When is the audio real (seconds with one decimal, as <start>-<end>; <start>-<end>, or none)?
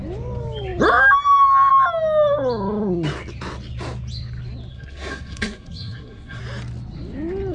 0.0-4.7; 6.4-7.5